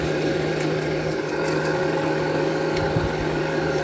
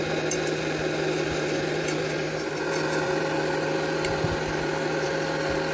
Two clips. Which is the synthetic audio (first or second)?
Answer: first